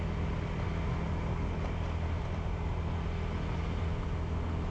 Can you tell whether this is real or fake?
real